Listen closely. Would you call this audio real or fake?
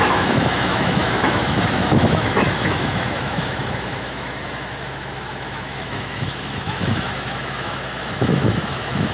fake